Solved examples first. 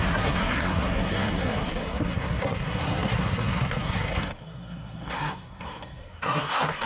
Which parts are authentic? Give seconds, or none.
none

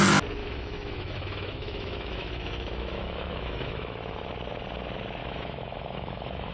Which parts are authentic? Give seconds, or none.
0.0-0.4; 4.3-5.2

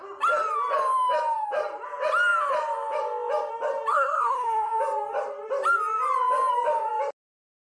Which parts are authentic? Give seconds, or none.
0.0-3.9; 4.8-7.7

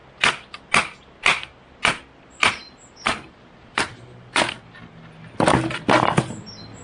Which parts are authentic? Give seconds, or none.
0.0-6.8

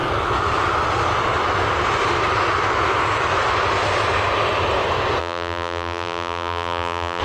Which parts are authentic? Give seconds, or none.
0.0-5.2

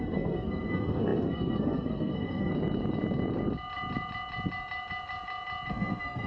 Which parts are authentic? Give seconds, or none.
2.5-5.7